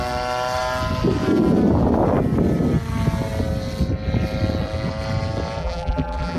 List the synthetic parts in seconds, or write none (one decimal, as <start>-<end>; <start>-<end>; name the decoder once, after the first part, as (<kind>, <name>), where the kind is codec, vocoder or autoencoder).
5.6-6.4 (vocoder, BigVGAN v2)